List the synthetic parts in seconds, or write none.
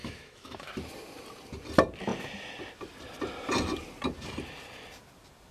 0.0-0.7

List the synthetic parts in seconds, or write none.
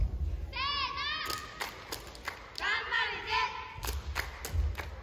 none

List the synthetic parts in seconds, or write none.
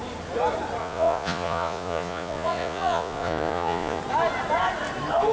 0.8-4.0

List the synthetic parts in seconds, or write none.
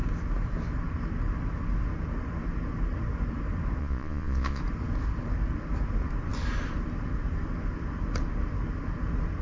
3.8-4.6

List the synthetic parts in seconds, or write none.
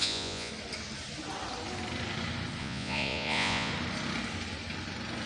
0.0-0.5; 2.6-3.7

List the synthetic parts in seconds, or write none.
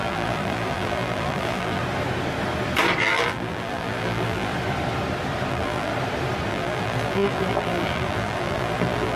0.0-1.8; 3.0-4.5; 5.5-5.9; 6.5-9.2